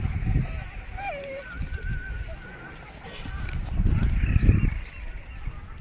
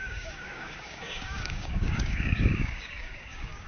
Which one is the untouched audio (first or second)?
first